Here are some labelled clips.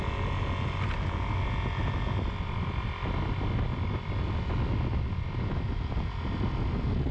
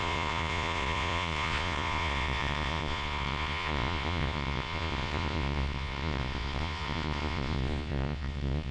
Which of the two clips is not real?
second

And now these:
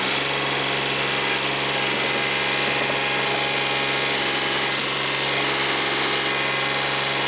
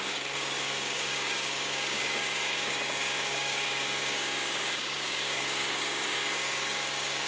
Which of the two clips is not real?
second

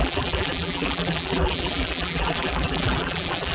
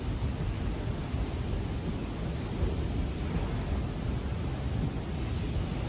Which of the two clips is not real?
first